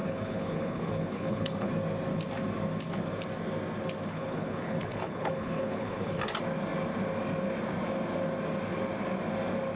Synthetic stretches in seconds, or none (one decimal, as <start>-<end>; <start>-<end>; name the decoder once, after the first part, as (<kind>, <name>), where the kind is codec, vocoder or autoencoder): 0.0-1.7 (codec, HILCodec); 4.1-6.2